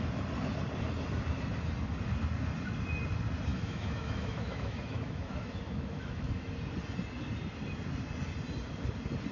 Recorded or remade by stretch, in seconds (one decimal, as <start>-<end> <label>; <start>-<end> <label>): 0.0-3.5 recorded; 3.5-6.5 remade; 6.5-9.3 recorded